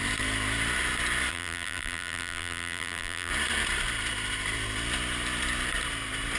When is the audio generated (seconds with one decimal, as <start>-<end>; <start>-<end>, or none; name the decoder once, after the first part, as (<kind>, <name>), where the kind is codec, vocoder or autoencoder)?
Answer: 1.3-3.3 (vocoder, BigVGAN v2)